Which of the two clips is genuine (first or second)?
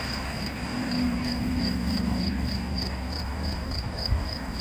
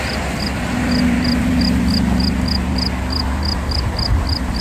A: second